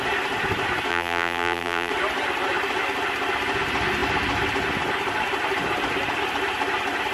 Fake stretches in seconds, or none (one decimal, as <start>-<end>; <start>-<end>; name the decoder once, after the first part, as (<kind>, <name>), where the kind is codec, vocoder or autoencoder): 0.9-1.9 (vocoder, BigVGAN v2)